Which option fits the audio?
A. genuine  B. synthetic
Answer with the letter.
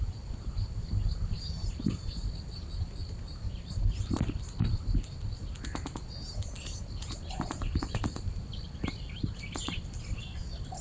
A